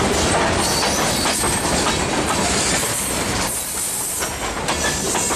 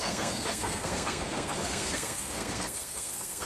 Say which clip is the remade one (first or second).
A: second